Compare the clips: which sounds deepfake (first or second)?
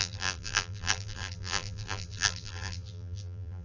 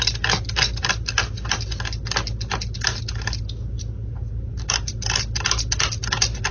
first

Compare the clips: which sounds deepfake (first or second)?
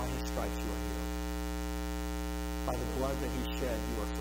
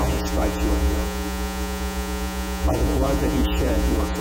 second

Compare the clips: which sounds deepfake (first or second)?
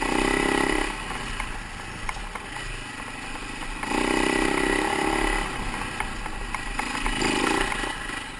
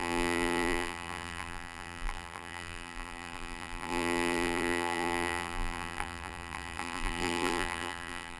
second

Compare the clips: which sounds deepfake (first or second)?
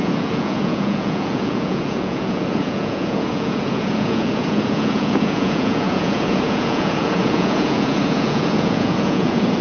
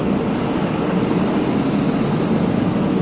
first